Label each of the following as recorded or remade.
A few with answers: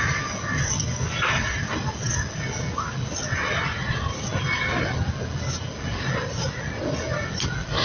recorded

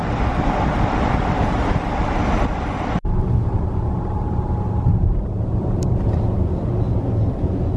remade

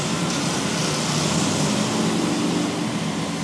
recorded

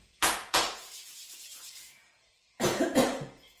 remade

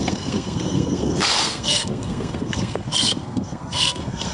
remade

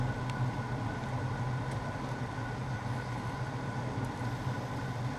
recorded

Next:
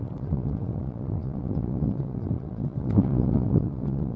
remade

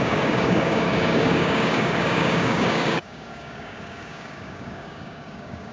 remade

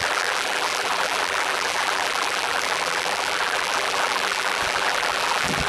remade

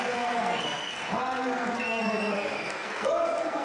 remade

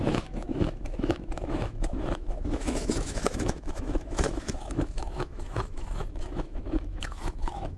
remade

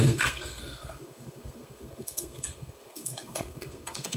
remade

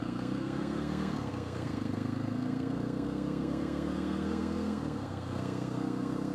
remade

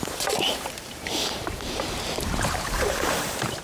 remade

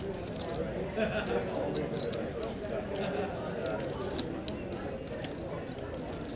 recorded